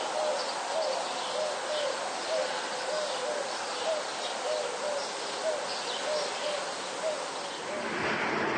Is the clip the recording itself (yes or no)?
yes